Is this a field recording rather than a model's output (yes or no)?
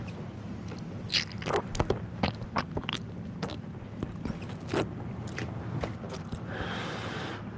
yes